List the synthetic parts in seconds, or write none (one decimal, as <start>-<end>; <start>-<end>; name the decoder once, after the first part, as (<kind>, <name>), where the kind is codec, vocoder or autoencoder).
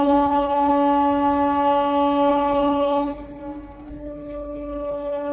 0.0-0.7 (codec, HILCodec); 2.3-3.4; 3.9-5.3